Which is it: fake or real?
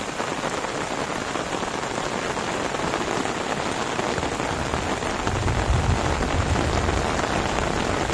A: real